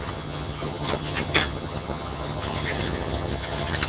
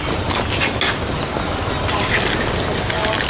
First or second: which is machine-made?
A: first